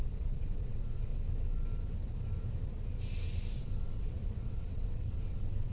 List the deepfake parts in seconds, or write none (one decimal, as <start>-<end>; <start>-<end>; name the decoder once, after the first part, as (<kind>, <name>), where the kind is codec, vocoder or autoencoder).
0.0-1.1 (vocoder, WaveNeXt); 3.6-5.7